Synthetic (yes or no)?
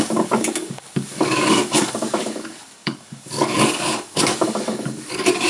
yes